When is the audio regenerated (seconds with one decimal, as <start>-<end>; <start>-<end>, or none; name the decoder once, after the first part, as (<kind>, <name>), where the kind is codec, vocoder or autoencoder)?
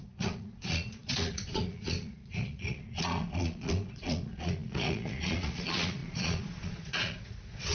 0.0-7.7 (vocoder, Vocos)